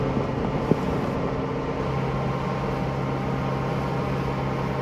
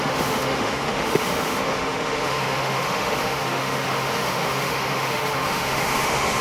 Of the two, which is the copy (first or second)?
second